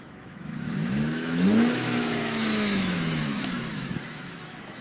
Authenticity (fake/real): fake